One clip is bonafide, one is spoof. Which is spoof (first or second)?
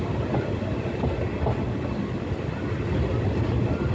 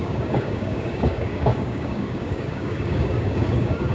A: second